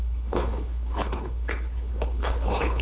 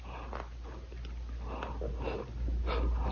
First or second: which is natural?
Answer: second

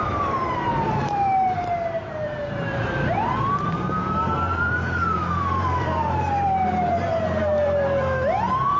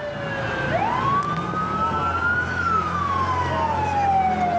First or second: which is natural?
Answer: second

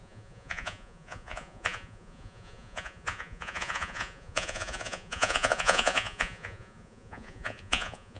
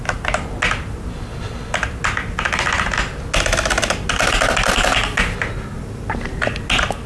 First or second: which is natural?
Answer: second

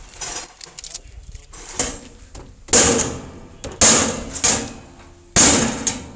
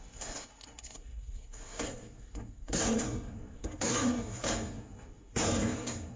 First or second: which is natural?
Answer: first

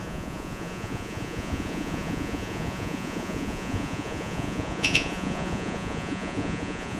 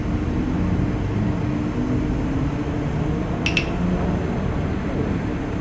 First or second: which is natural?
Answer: second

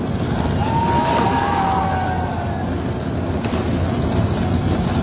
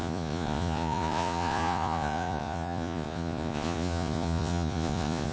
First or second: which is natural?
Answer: first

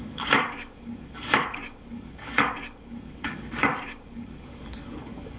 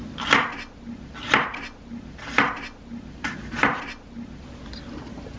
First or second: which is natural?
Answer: second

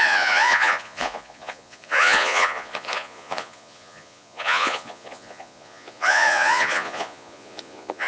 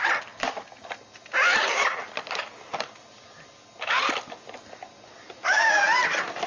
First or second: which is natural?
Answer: second